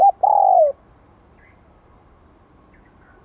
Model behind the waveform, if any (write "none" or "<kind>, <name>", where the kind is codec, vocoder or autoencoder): none